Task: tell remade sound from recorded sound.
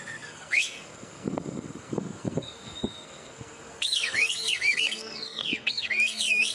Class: remade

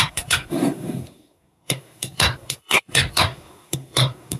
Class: remade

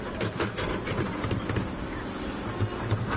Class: recorded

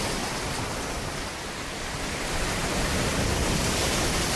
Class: recorded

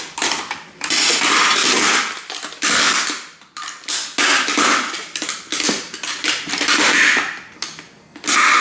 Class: recorded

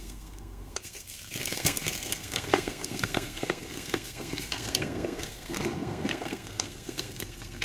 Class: remade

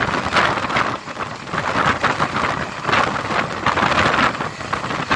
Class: recorded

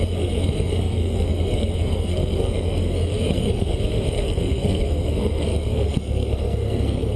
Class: remade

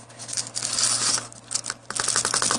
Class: recorded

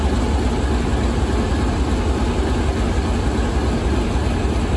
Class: recorded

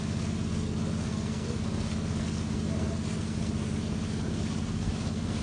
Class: remade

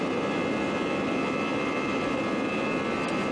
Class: recorded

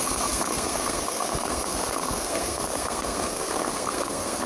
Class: remade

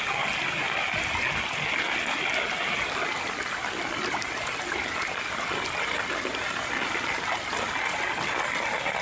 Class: recorded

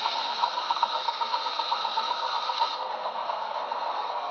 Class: remade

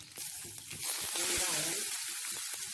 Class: recorded